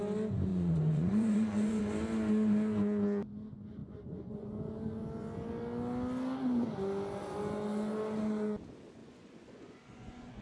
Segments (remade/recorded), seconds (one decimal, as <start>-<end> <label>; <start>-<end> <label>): 0.0-0.5 recorded; 0.5-1.8 remade; 1.8-3.8 recorded; 3.8-4.5 remade; 4.5-9.0 recorded; 9.0-10.4 remade

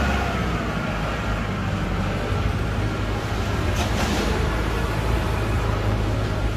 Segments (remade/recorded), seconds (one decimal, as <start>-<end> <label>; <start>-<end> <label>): 0.0-4.0 recorded; 4.0-6.6 remade

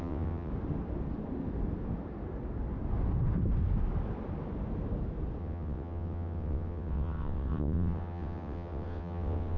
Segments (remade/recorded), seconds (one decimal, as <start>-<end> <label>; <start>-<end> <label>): 0.0-0.5 remade; 0.5-5.4 recorded; 5.4-9.6 remade

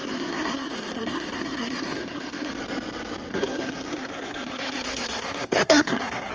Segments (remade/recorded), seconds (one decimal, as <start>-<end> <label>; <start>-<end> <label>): 0.0-2.5 remade; 2.5-3.3 recorded; 3.3-6.3 remade

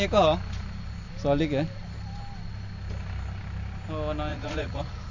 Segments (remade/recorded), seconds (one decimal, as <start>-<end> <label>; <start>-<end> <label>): 0.0-4.3 recorded; 4.3-5.1 remade